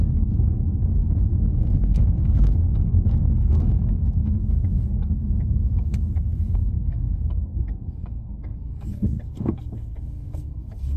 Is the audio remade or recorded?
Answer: remade